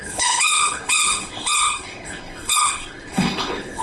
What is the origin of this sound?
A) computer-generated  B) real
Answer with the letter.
A